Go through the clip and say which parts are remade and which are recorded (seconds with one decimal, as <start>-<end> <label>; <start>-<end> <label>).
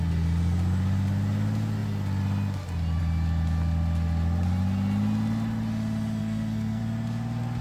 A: 0.0-6.2 recorded; 6.2-6.8 remade; 6.8-7.6 recorded